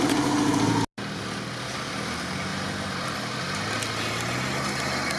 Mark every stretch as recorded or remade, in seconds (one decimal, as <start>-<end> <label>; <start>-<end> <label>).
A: 0.0-5.2 recorded